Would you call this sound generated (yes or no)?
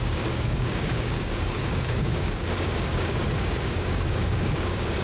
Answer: yes